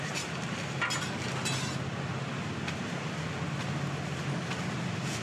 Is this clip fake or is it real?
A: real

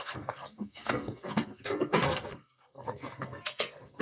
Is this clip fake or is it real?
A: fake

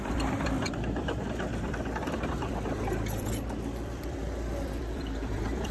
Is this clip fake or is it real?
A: fake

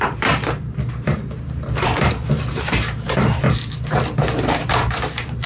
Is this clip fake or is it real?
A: fake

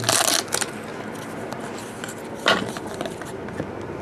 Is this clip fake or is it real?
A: real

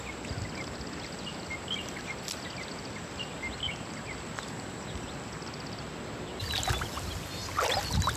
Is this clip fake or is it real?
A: real